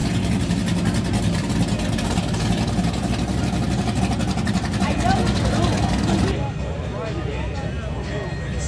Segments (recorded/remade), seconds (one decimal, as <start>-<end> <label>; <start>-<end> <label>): 0.0-8.7 recorded